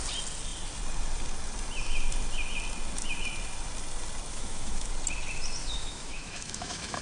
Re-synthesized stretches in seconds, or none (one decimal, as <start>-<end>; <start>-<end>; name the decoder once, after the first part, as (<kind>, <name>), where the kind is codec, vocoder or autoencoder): 4.3-4.9 (autoencoder, DAC-VAE); 5.6-7.0